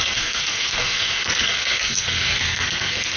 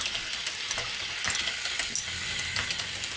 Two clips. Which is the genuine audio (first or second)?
second